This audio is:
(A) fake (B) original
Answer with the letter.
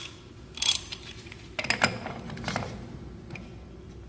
B